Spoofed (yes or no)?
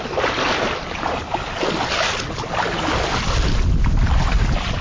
no